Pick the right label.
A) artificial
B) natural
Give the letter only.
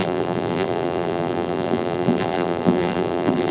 A